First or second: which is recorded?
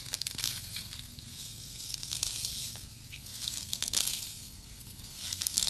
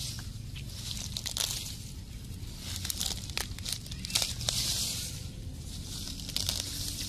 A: second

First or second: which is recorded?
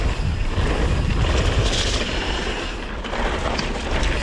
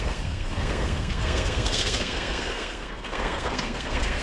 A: first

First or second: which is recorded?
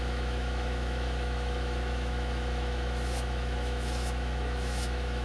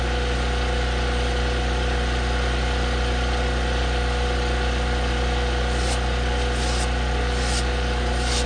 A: second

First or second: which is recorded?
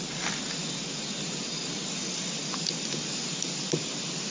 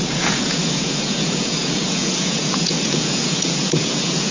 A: first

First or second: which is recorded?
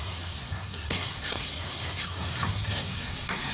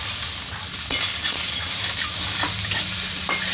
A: second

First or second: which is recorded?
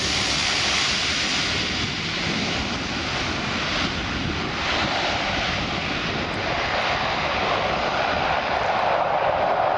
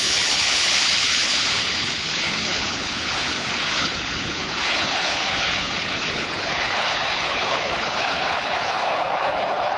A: first